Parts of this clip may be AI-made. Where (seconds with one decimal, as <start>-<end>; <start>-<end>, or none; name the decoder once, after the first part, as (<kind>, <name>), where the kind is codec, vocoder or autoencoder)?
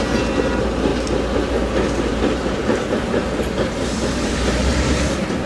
2.1-5.5 (vocoder, BigVGAN v2)